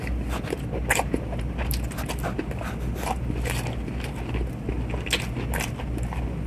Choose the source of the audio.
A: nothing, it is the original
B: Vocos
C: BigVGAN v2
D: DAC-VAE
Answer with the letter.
A